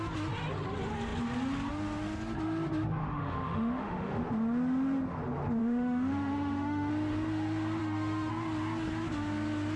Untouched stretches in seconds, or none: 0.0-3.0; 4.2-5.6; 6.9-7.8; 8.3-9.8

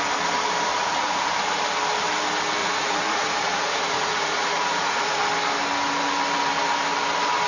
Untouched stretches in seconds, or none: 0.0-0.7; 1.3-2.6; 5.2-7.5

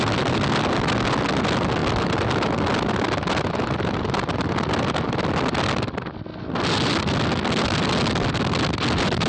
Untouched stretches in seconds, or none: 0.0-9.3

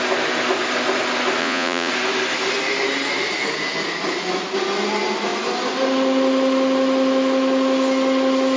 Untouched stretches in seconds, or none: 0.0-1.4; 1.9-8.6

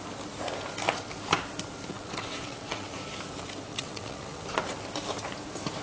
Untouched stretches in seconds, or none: 0.0-1.9; 2.9-3.7; 4.4-5.8